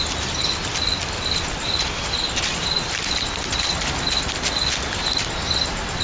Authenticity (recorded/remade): recorded